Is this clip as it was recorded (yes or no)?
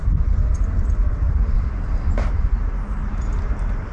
yes